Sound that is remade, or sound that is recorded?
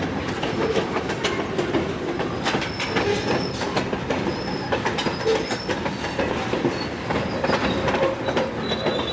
recorded